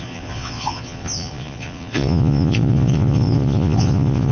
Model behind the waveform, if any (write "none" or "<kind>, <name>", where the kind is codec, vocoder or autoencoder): vocoder, Vocos